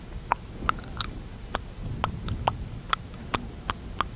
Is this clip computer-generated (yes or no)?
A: no